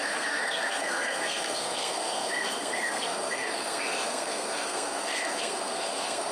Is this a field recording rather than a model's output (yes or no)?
no